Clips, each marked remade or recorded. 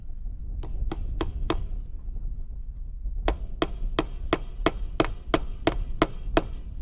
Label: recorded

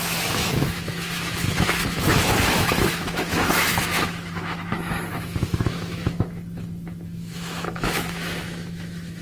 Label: remade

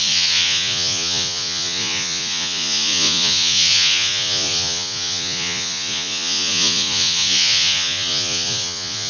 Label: remade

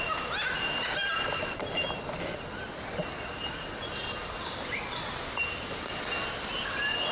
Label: recorded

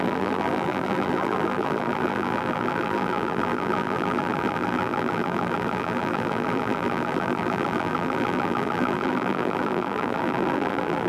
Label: remade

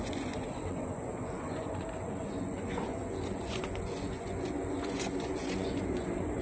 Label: remade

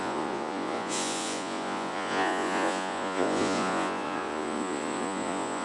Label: remade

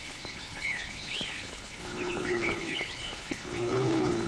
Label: remade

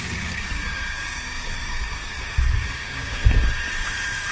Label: remade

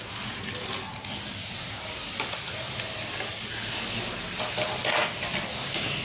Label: recorded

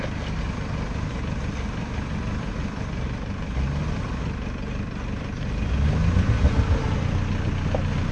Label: recorded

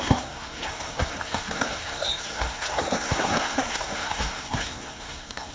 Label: remade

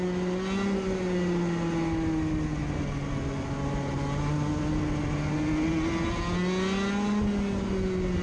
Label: recorded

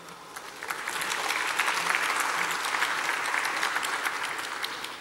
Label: recorded